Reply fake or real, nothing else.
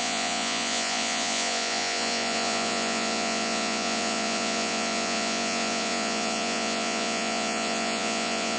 fake